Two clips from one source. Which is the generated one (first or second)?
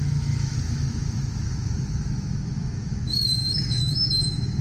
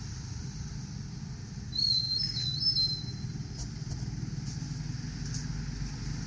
first